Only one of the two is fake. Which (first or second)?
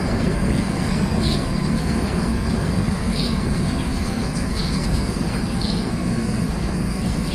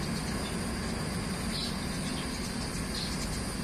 first